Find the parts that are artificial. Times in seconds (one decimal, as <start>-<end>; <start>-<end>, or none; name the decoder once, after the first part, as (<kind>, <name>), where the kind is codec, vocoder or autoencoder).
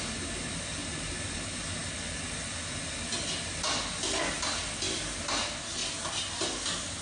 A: none